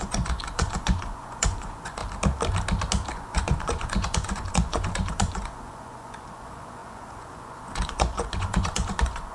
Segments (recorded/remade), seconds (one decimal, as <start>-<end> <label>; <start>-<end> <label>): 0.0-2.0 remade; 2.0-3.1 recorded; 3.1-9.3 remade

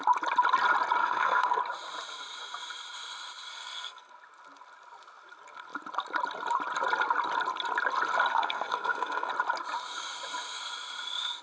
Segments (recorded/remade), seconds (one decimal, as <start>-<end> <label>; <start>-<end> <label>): 0.0-1.0 recorded; 1.0-1.6 remade; 1.6-3.5 recorded; 3.5-4.1 remade; 4.1-8.3 recorded; 8.3-9.3 remade; 9.3-11.4 recorded

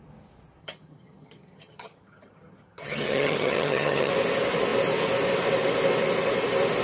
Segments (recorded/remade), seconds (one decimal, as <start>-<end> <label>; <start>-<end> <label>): 0.0-0.6 recorded; 0.6-4.1 remade; 4.1-6.8 recorded